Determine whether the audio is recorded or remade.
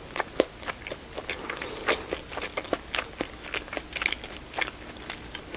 recorded